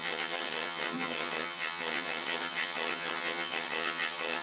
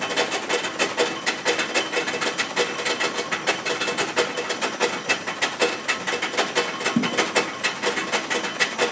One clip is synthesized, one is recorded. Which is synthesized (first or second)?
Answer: first